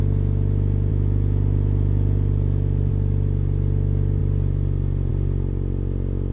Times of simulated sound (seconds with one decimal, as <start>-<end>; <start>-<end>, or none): 0.9-2.9